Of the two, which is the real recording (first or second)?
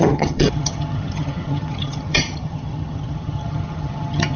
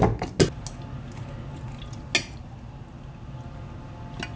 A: second